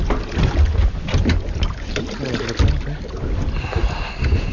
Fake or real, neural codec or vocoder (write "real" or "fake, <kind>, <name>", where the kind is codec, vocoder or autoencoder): real